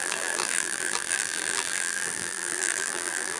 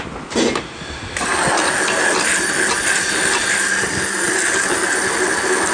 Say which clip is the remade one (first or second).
first